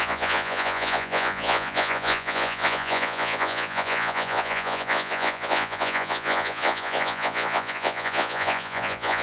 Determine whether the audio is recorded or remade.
remade